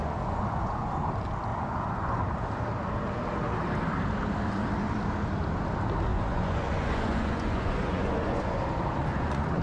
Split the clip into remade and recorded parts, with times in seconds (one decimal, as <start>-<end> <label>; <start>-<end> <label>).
0.0-1.1 remade; 1.1-1.5 recorded; 1.5-2.2 remade; 2.2-6.1 recorded; 6.1-8.6 remade; 8.6-9.0 recorded; 9.0-9.6 remade